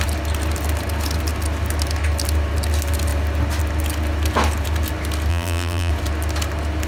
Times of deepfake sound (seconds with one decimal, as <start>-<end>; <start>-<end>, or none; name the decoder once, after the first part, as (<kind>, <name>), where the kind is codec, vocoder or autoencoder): 5.3-5.9 (vocoder, BigVGAN v2)